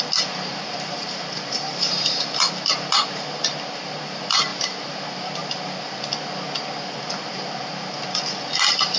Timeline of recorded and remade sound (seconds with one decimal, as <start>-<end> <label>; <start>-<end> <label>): 0.0-0.5 recorded; 0.5-3.4 remade; 3.4-4.5 recorded; 4.5-5.0 remade; 5.0-9.0 recorded